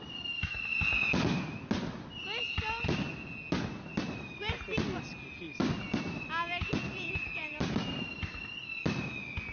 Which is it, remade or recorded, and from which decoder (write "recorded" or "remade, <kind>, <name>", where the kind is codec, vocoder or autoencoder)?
recorded